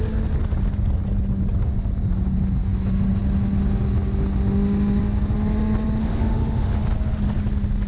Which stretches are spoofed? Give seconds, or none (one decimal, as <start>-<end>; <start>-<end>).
6.0-6.8